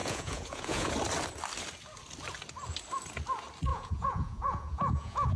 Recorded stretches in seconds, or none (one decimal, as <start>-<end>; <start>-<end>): 0.9-3.7